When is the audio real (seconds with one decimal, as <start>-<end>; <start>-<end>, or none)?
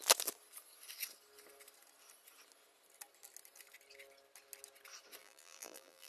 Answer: 0.0-5.2